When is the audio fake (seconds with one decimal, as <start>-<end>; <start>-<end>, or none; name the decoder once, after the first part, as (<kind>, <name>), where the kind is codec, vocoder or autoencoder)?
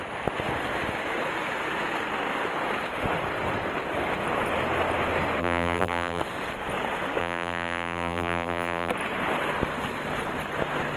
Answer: 5.4-6.2 (vocoder, BigVGAN v2); 7.2-8.9